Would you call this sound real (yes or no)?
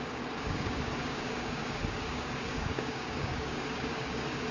no